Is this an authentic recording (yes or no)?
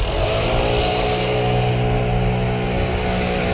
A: yes